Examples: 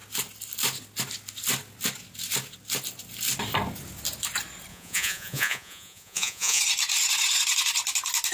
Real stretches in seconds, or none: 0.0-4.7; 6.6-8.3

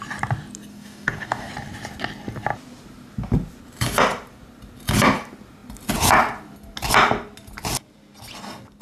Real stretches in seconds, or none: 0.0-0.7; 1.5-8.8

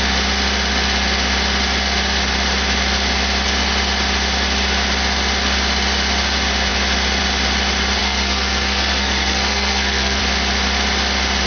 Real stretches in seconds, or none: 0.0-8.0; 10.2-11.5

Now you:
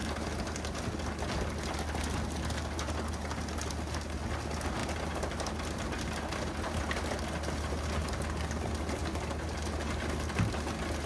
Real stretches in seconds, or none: 0.0-11.1

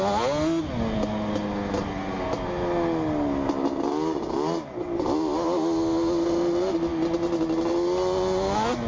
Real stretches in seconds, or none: 0.0-8.9